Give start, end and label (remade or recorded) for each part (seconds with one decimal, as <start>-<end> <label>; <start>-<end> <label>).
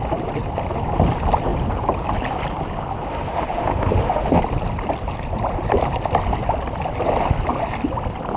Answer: 0.0-3.1 recorded; 3.1-4.4 remade; 4.4-8.4 recorded